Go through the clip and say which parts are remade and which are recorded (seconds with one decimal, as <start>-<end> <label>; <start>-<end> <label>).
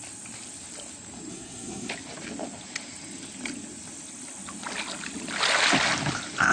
0.0-1.3 recorded; 1.3-1.9 remade; 1.9-6.5 recorded